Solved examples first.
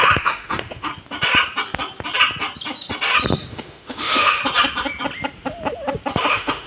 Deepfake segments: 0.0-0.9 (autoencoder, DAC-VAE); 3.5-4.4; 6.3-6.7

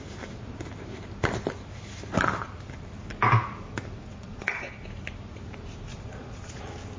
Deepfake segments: 4.1-4.8 (vocoder, Vocos); 5.9-6.6